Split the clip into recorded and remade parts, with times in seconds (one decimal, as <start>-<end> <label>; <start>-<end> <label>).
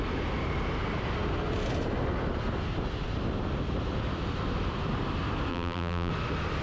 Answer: 0.0-5.5 recorded; 5.5-6.1 remade; 6.1-6.6 recorded